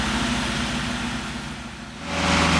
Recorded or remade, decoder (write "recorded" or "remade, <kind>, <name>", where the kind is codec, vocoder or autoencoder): recorded